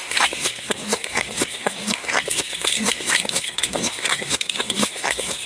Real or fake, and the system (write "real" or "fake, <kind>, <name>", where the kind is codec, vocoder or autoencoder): fake, codec, SNAC